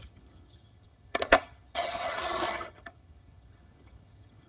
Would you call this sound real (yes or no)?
no